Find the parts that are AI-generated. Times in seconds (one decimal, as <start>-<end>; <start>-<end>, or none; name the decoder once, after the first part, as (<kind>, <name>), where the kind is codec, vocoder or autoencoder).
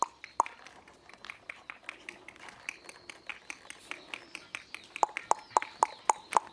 none